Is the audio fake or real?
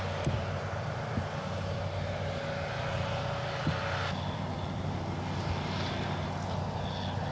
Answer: real